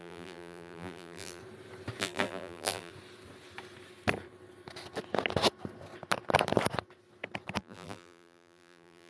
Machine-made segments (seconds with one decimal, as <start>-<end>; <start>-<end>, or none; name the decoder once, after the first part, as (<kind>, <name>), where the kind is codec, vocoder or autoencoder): 0.0-1.4 (vocoder, BigVGAN v2); 2.0-2.9; 7.6-9.1